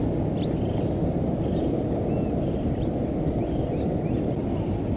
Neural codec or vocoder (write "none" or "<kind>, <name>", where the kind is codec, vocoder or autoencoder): none